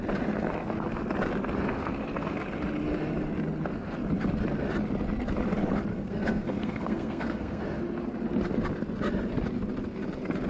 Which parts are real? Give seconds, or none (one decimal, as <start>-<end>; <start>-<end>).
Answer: 0.0-5.9; 7.6-10.5